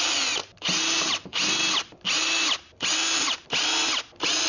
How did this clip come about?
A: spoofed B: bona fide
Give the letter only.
B